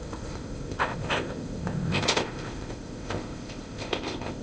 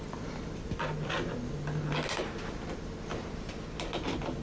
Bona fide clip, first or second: second